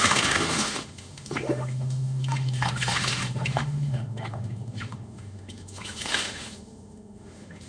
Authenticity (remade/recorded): remade